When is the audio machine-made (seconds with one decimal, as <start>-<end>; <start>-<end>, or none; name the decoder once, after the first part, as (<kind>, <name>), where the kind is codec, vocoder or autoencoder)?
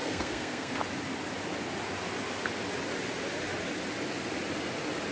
0.0-0.7 (codec, SNAC)